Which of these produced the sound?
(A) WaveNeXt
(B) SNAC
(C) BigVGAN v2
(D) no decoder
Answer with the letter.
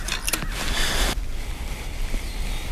D